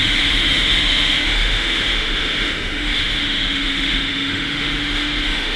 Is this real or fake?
fake